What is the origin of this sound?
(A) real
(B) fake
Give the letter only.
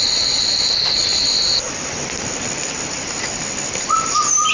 B